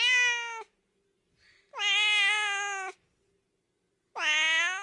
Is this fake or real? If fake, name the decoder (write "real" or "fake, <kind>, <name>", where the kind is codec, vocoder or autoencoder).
real